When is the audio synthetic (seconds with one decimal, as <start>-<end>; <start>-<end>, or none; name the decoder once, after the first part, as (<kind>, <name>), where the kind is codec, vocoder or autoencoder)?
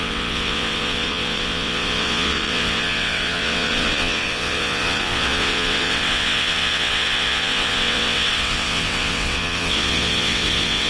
0.0-10.9 (vocoder, WaveNeXt)